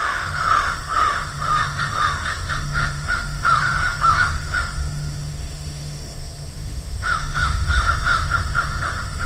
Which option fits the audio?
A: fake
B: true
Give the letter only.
A